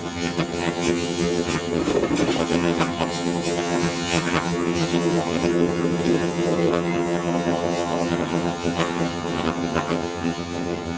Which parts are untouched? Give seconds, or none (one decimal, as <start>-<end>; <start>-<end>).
1.8-2.4